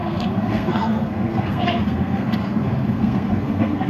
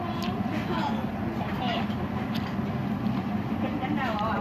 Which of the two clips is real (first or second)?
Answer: second